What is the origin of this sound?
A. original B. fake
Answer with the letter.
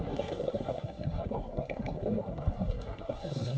B